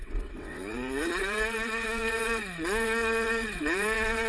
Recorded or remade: remade